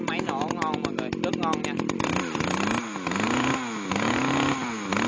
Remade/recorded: recorded